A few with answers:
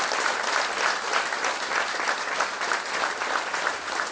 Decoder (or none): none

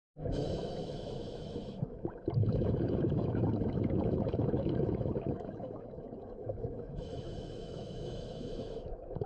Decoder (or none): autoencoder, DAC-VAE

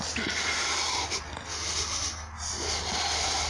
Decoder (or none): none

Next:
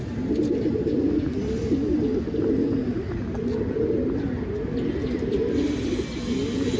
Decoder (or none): none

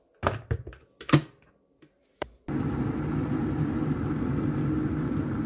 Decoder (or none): none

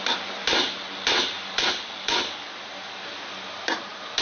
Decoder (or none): none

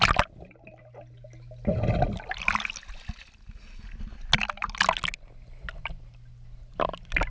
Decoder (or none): none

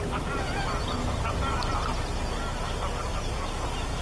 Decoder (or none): none